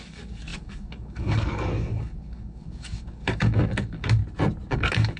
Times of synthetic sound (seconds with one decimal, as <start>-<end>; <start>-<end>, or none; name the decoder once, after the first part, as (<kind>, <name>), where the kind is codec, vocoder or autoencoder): 0.0-4.2 (codec, DAC); 4.7-5.2